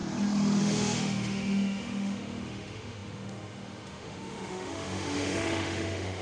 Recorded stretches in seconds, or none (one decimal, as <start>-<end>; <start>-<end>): 0.0-0.6

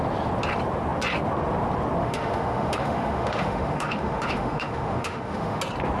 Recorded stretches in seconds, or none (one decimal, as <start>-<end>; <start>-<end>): 0.0-2.0; 5.6-6.0

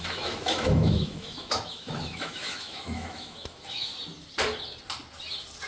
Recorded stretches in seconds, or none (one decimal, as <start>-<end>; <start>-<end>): 3.9-5.7

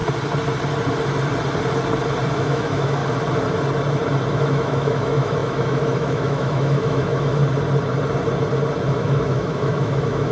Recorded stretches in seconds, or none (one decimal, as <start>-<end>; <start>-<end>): 0.0-2.3; 3.0-4.3; 7.4-8.9

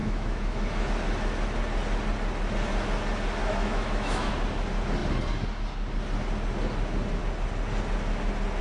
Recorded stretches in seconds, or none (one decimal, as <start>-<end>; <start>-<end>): 0.9-3.4; 4.3-8.6

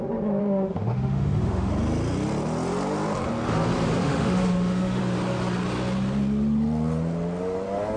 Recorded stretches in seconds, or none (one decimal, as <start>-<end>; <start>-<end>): 0.0-0.4; 1.7-4.0; 5.0-8.0

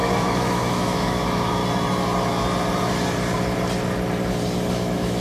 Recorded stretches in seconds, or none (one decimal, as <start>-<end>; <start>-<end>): 1.6-4.7